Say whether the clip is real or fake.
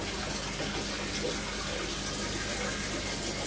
real